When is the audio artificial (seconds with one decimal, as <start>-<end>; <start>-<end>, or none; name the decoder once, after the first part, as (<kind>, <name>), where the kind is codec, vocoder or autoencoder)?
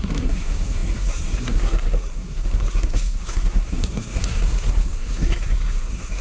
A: 0.0-6.2 (codec, SNAC)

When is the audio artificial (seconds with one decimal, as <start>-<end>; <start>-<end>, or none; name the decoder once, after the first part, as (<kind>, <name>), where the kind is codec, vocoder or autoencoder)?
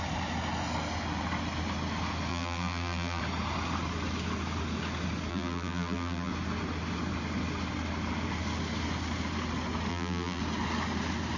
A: 2.3-3.2 (vocoder, BigVGAN v2); 5.3-6.3; 9.9-10.4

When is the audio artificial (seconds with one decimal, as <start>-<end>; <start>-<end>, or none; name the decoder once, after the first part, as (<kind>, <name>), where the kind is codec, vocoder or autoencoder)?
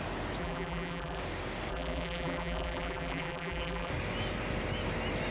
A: 0.4-1.2 (vocoder, BigVGAN v2); 1.7-3.9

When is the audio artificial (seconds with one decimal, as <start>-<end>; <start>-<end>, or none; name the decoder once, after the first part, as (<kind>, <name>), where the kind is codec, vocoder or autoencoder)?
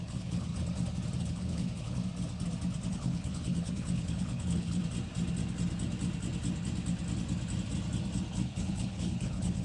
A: 0.0-0.5 (codec, HILCodec); 1.2-2.0; 2.9-4.8; 8.3-9.6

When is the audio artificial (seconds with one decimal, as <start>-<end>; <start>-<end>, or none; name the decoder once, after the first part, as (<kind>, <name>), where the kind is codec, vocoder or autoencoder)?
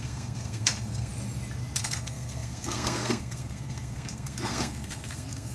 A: 0.0-1.1 (codec, SNAC); 1.8-5.5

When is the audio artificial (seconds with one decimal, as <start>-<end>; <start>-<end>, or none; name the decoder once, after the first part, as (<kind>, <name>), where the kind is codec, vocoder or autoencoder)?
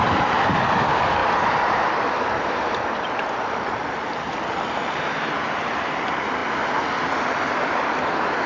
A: none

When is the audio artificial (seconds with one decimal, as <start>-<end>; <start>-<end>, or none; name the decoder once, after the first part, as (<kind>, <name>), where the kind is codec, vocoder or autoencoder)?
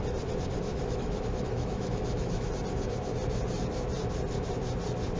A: 0.7-2.5 (autoencoder, DAC-VAE)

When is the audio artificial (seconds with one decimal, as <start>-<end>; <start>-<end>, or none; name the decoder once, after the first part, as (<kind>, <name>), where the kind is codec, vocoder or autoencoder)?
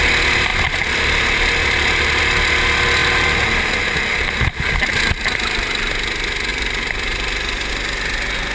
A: 0.5-2.2 (vocoder, BigVGAN v2); 6.5-7.7